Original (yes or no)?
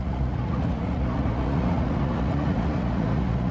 no